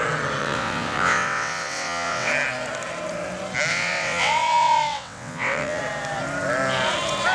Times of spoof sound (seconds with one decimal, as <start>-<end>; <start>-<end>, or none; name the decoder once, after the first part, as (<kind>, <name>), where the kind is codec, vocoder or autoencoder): 0.4-2.3 (vocoder, WaveNeXt); 3.7-5.8